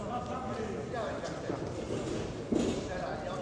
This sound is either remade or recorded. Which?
recorded